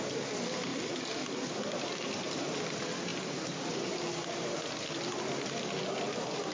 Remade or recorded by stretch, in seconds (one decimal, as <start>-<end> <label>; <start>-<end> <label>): 0.0-6.5 recorded